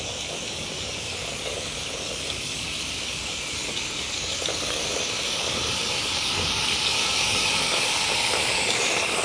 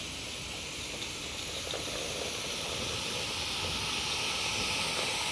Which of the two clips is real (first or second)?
second